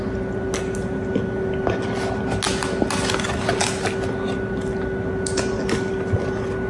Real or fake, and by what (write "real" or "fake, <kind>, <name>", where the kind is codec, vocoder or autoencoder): real